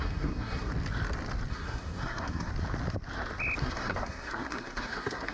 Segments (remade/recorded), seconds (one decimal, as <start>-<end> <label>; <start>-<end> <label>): 0.0-0.7 remade; 0.7-1.5 recorded; 1.5-2.5 remade; 2.5-3.6 recorded; 3.6-5.3 remade